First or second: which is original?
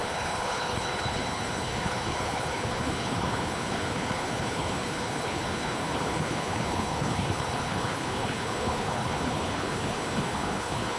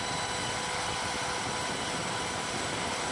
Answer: second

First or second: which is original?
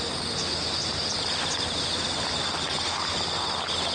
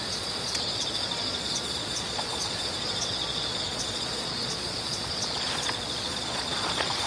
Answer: first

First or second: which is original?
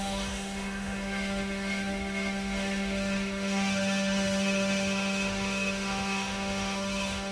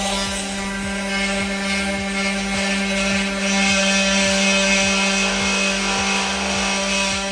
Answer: second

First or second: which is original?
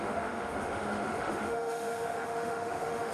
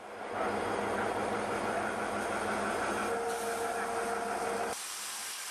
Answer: second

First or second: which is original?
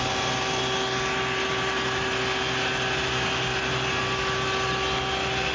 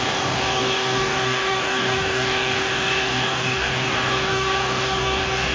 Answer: first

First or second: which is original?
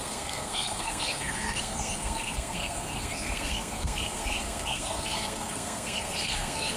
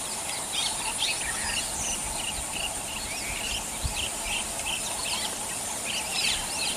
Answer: second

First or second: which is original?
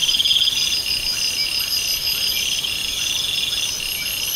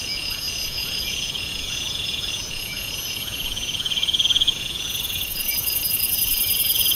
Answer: first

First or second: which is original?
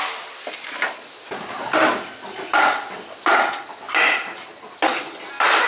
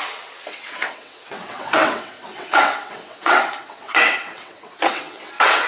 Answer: first